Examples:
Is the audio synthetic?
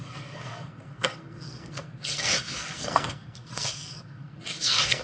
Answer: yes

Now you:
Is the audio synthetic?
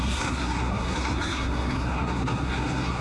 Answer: yes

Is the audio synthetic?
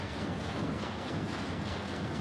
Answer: yes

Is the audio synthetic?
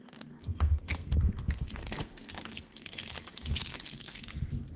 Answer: yes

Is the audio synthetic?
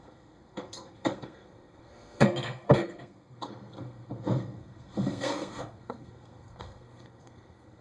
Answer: yes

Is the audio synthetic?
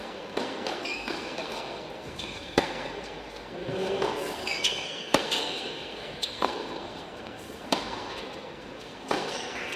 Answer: yes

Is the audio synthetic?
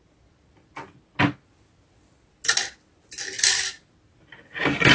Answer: no